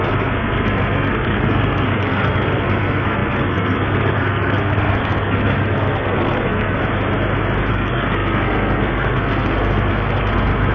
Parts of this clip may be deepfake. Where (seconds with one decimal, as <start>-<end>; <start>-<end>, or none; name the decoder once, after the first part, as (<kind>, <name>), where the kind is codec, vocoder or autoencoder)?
0.0-6.8 (codec, SNAC); 7.7-10.7